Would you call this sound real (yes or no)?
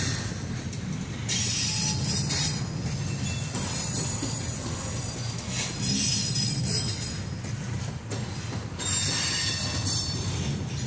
yes